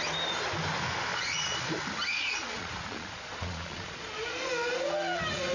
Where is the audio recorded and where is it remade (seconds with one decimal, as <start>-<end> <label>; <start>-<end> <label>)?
0.0-1.1 recorded; 1.1-1.7 remade; 1.7-2.1 recorded; 2.1-4.5 remade; 4.5-5.5 recorded